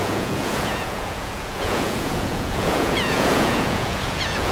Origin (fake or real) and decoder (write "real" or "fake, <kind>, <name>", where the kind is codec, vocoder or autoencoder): fake, vocoder, Vocos